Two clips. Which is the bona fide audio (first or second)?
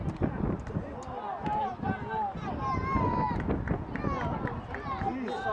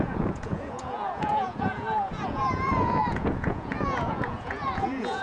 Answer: first